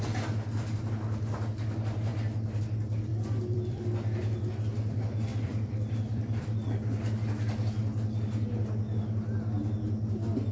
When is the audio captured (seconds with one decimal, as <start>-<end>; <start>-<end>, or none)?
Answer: 0.0-3.1; 4.5-5.3; 7.2-10.5